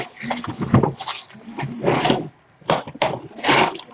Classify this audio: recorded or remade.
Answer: recorded